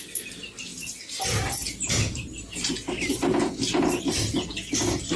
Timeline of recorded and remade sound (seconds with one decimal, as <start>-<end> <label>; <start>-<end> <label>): 0.0-5.2 recorded